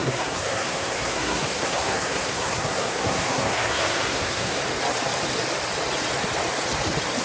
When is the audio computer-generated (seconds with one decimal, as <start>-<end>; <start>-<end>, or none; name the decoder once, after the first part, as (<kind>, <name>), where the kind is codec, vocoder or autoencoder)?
0.0-4.6 (codec, SNAC)